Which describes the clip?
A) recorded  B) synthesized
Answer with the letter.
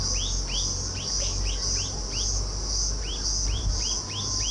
A